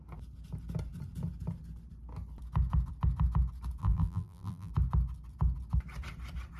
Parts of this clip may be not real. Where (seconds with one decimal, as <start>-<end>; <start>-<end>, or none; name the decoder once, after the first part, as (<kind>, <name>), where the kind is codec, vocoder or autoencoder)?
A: 3.8-4.7 (vocoder, BigVGAN v2)